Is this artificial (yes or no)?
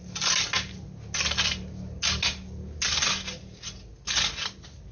no